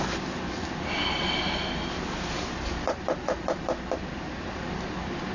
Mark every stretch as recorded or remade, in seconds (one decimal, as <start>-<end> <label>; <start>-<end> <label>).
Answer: 0.0-5.3 recorded